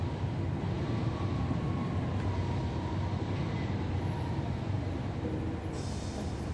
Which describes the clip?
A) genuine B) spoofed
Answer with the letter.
A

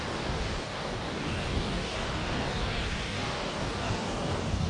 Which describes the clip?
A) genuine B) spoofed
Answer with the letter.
B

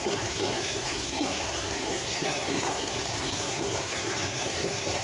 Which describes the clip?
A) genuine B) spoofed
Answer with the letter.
B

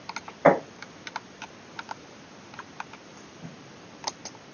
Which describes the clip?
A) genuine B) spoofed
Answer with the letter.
A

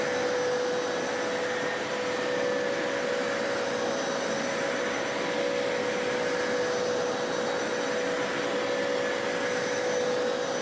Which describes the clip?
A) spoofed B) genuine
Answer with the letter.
B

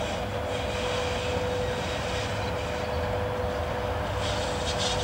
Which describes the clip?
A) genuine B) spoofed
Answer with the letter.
A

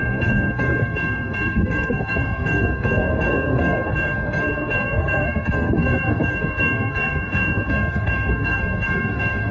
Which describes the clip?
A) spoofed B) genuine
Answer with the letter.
A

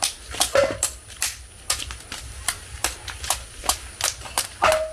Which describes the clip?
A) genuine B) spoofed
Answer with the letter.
A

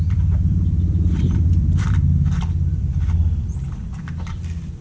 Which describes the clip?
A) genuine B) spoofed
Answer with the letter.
B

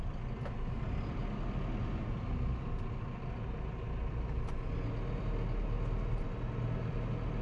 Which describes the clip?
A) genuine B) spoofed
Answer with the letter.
A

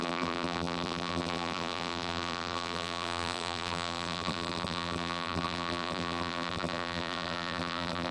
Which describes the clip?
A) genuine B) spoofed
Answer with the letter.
B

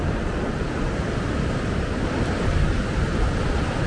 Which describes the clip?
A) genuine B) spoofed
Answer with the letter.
B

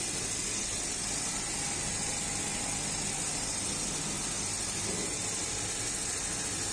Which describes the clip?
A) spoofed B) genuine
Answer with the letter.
B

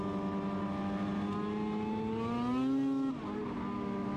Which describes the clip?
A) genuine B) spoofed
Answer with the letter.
A